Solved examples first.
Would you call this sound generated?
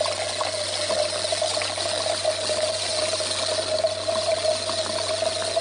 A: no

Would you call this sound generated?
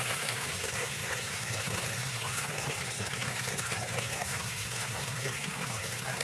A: yes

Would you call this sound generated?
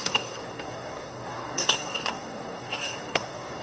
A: yes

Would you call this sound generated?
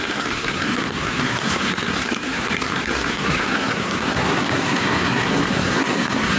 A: yes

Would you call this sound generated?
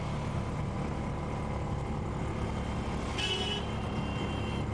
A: no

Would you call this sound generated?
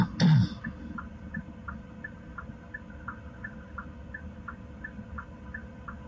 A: no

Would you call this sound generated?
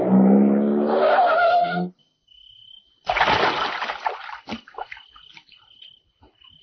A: no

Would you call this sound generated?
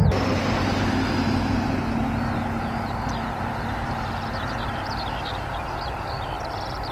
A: no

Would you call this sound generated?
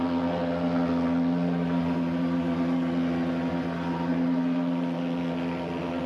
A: no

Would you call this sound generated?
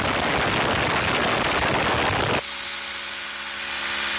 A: no